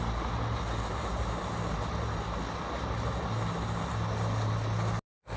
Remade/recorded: recorded